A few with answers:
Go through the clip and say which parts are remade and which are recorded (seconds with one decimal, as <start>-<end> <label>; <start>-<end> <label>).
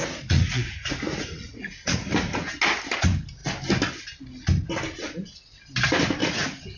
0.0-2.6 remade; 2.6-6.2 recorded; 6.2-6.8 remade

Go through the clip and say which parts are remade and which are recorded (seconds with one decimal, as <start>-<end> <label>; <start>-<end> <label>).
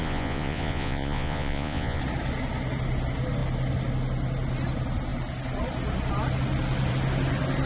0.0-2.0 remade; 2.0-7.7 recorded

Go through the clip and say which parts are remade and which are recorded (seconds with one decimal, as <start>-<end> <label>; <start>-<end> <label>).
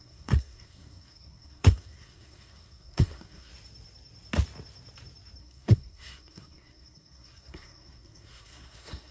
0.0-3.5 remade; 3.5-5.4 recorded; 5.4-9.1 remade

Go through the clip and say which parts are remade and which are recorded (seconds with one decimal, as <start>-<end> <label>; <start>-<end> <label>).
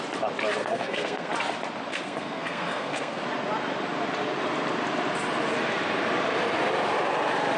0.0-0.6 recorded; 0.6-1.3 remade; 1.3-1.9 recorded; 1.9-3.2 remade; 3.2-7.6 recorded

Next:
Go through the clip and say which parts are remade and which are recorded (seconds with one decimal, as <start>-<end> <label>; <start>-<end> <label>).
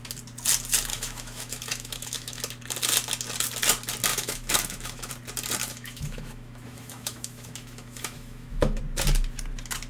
0.0-0.9 recorded; 0.9-2.4 remade; 2.4-4.1 recorded; 4.1-5.1 remade; 5.1-5.6 recorded; 5.6-8.8 remade; 8.8-9.9 recorded